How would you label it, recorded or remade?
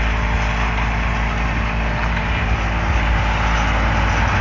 recorded